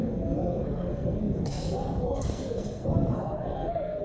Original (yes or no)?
no